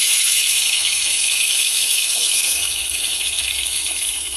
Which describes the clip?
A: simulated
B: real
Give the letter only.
A